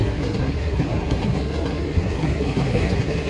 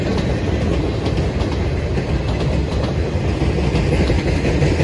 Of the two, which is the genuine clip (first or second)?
second